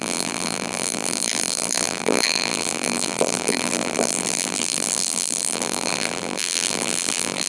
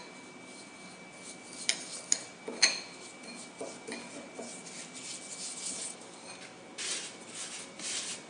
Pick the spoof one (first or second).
first